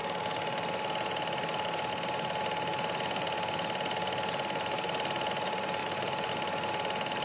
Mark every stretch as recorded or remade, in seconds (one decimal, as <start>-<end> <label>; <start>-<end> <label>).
0.0-5.8 recorded; 5.8-6.3 remade; 6.3-7.2 recorded

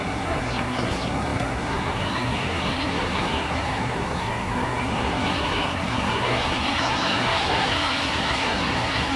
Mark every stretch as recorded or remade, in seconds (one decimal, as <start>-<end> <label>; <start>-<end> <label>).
0.0-9.2 remade

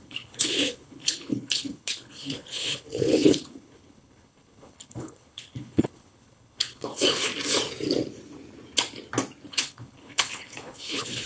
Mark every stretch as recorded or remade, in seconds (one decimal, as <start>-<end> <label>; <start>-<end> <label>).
0.0-7.3 remade; 7.3-9.5 recorded; 9.5-11.3 remade

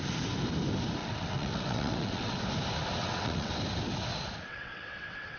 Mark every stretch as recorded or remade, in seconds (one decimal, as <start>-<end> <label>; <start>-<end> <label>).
0.0-1.0 recorded; 1.0-2.4 remade; 2.4-3.0 recorded; 3.0-3.5 remade; 3.5-4.5 recorded; 4.5-5.4 remade